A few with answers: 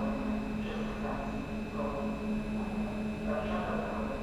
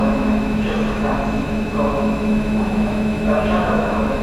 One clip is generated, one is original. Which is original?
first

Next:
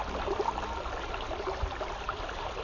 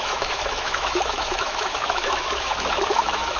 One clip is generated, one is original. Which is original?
first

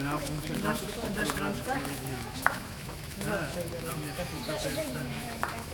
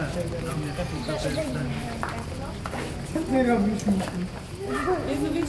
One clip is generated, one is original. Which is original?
second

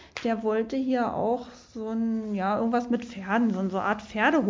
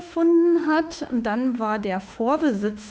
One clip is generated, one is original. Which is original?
first